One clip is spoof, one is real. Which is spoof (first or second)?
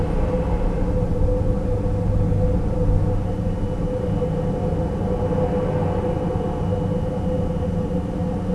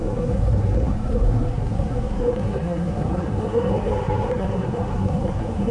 second